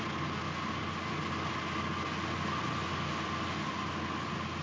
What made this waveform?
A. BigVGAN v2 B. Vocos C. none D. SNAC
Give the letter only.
C